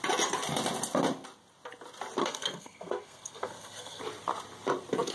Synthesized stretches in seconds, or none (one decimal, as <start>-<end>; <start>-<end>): 2.2-4.0